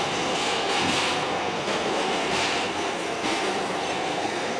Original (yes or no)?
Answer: no